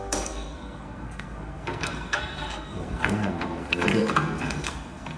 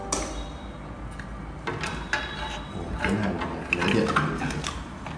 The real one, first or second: second